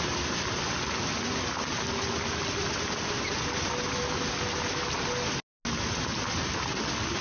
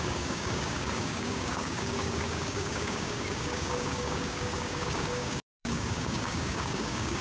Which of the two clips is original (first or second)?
first